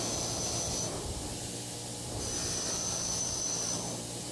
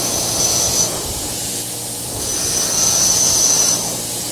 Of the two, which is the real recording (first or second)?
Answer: first